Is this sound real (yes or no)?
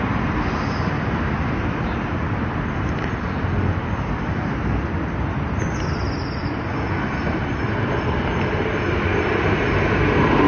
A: yes